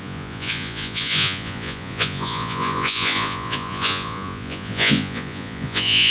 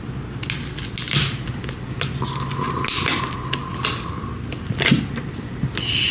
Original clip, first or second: second